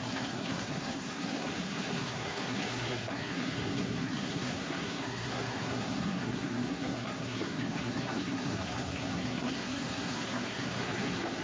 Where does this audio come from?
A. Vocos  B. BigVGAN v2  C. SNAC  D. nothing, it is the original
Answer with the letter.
C